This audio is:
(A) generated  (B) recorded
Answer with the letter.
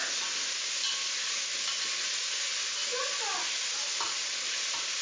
B